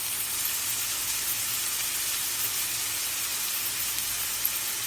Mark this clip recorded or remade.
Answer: recorded